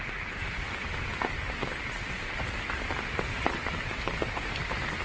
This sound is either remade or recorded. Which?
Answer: recorded